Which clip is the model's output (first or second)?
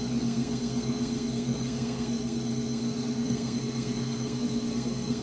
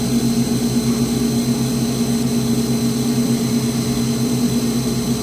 first